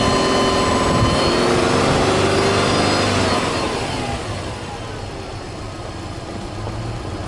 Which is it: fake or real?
real